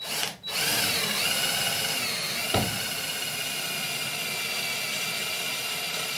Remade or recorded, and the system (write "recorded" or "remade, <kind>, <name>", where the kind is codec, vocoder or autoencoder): recorded